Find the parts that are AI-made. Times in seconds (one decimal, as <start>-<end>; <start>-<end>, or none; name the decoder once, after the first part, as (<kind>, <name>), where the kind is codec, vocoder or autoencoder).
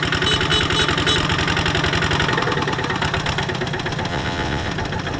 4.1-4.7 (vocoder, WaveNeXt)